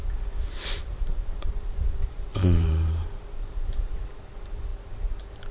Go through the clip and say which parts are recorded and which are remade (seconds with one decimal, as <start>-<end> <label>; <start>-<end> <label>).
0.0-0.9 recorded; 0.9-4.2 remade; 4.2-5.5 recorded